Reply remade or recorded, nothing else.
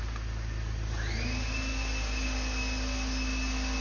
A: recorded